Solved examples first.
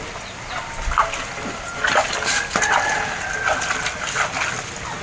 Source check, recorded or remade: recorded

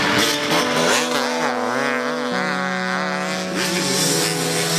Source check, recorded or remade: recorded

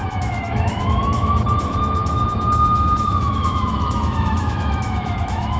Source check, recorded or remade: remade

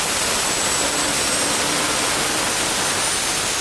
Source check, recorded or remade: recorded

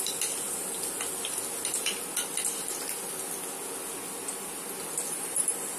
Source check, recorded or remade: recorded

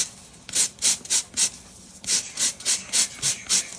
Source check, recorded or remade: recorded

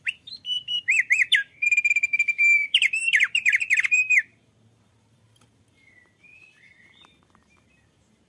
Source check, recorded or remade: remade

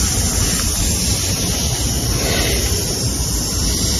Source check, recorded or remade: recorded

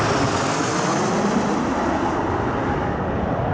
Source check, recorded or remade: recorded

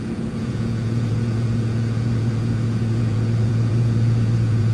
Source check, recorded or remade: remade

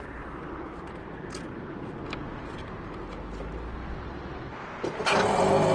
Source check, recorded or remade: recorded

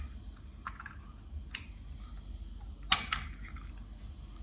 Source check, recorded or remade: recorded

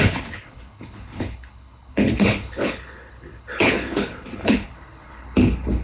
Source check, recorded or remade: remade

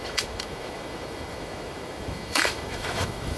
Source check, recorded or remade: remade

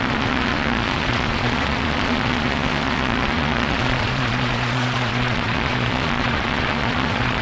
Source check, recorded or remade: remade